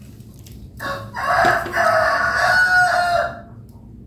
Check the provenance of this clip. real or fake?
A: real